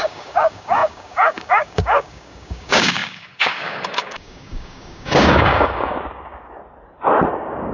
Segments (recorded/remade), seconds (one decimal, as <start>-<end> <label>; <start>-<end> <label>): 0.0-6.6 remade; 6.6-7.3 recorded; 7.3-7.7 remade